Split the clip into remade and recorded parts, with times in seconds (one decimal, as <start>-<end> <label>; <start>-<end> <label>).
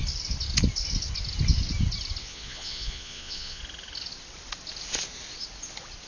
0.0-2.2 recorded; 2.2-3.6 remade; 3.6-6.1 recorded